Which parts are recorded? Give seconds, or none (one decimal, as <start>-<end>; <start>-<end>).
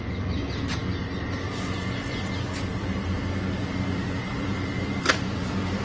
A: none